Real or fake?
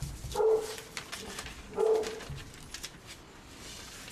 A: real